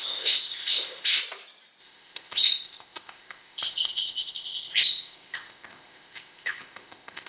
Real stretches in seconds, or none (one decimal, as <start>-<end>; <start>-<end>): 1.2-1.8